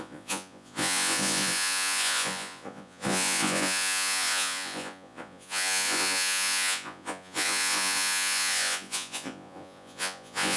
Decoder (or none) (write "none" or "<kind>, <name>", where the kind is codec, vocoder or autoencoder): vocoder, Vocos